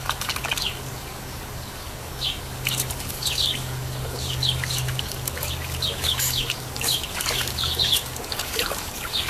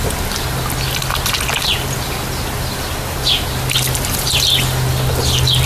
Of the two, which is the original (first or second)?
second